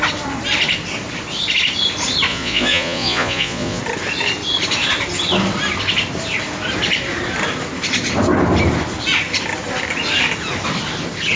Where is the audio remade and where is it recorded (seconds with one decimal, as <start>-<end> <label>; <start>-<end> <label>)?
0.0-2.3 recorded; 2.3-3.8 remade; 3.8-11.4 recorded